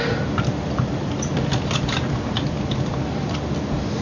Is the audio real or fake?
real